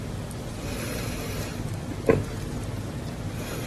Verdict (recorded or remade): recorded